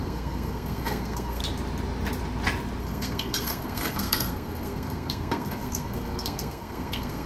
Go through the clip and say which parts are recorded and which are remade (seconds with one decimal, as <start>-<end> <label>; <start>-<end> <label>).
0.0-1.4 remade; 1.4-2.8 recorded; 2.8-7.3 remade